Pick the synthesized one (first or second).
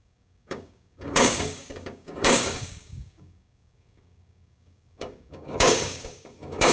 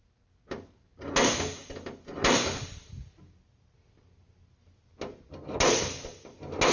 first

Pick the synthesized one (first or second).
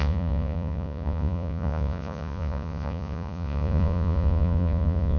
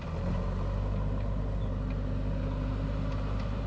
first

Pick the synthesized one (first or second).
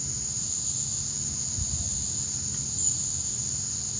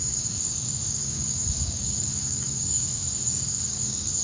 second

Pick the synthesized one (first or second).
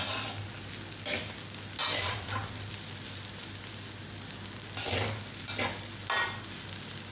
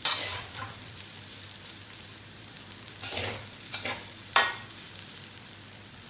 second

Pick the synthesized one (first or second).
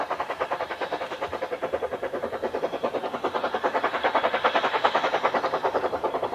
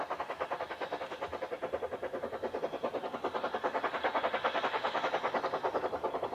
first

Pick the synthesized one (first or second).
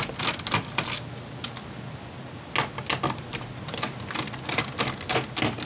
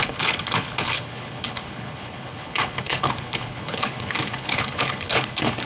second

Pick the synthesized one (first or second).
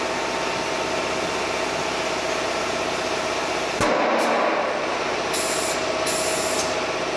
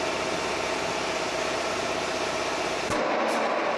second